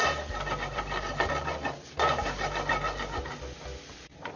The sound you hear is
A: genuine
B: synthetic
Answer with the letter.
A